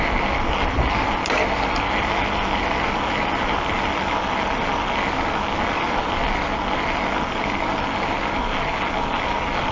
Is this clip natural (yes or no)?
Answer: yes